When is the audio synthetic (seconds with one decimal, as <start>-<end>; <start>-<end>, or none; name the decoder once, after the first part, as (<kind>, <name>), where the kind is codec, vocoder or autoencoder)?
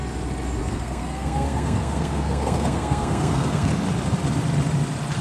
0.6-3.7 (codec, SNAC)